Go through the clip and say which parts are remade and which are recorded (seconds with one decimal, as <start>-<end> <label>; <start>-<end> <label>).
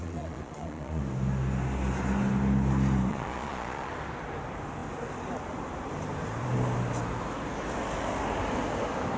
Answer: 0.0-1.0 remade; 1.0-3.1 recorded; 3.1-3.9 remade; 3.9-9.2 recorded